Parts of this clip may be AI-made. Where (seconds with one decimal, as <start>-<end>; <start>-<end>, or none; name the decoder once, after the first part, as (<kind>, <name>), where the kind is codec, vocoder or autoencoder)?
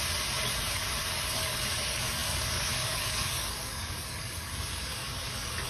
0.7-5.7 (codec, DAC)